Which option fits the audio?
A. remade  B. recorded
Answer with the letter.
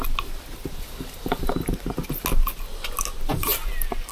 B